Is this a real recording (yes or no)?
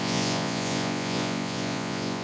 no